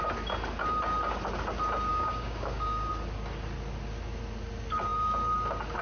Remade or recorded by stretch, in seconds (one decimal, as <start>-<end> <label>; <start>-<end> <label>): 0.0-1.9 recorded; 1.9-2.9 remade; 2.9-5.8 recorded